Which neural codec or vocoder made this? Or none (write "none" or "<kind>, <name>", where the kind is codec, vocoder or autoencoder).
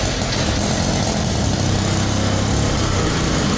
none